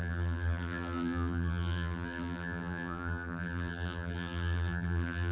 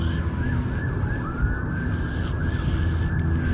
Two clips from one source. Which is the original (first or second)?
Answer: second